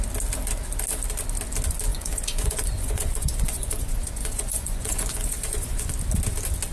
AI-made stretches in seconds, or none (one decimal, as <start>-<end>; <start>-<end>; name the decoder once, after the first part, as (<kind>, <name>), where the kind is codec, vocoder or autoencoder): 1.9-5.9 (vocoder, Vocos)